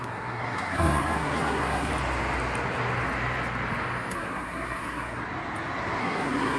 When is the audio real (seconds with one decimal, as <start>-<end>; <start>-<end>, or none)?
1.9-4.1; 5.2-6.0